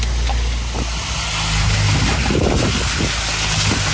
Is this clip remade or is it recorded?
recorded